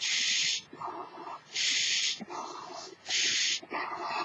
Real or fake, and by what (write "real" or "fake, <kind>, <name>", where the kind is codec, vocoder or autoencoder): fake, vocoder, BigVGAN v2